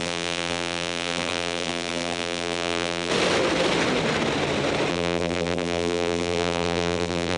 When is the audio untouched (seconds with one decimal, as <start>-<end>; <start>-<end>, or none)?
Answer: 3.1-4.9